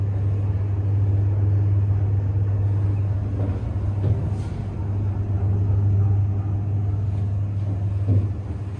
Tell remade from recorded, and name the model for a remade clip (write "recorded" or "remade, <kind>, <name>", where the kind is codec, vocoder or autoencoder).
recorded